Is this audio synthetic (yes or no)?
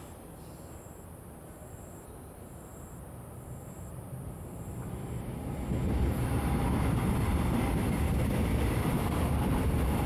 yes